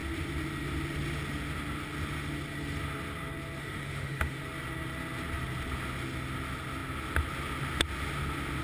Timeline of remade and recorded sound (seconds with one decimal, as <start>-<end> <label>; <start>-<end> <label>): 0.0-3.6 recorded; 3.6-4.4 remade; 4.4-8.6 recorded